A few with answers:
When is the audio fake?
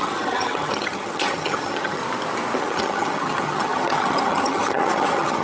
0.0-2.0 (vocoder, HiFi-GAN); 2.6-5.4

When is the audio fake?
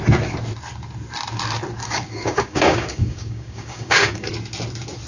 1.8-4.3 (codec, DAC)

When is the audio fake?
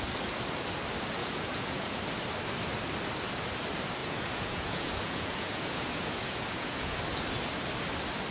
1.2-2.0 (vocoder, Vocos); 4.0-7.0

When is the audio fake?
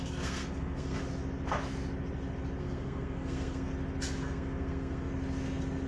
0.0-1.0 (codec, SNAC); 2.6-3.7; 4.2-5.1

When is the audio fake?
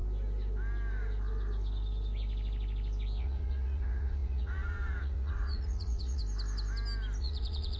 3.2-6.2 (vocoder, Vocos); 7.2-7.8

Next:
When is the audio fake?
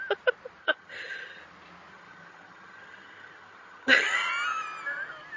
0.6-1.4 (vocoder, HiFi-GAN); 1.9-4.3